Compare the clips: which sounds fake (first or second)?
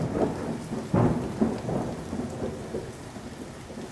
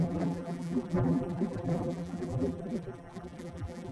second